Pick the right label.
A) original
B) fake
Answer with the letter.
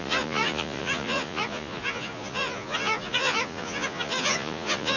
B